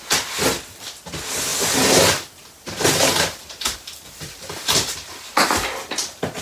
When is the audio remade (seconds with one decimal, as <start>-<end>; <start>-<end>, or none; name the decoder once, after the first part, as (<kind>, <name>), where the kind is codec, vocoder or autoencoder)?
none